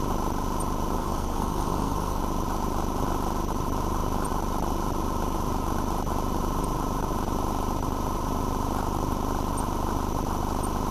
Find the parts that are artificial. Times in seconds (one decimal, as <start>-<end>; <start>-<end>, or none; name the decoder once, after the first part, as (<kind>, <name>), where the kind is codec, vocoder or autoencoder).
1.0-2.2 (codec, SNAC)